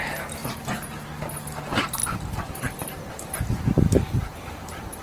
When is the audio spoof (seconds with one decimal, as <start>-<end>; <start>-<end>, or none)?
0.0-0.4; 1.6-2.0; 3.1-5.0